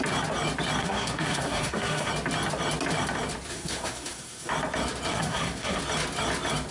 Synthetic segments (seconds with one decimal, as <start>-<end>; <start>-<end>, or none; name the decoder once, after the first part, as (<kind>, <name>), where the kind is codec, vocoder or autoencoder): 0.8-2.1 (codec, SNAC); 3.5-4.5; 5.1-5.8